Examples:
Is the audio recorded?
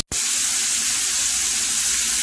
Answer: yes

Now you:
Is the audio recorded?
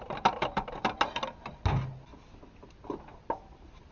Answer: yes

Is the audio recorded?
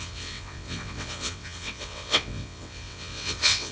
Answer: no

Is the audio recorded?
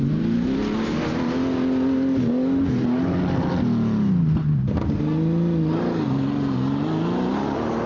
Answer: yes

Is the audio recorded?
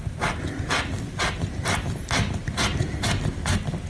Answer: yes